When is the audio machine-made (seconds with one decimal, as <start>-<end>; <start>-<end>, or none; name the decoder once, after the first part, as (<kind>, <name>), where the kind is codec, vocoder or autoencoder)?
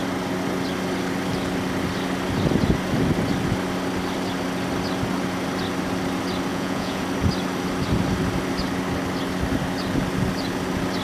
6.5-7.0 (vocoder, Vocos)